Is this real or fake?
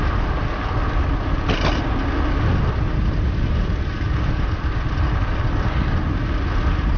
real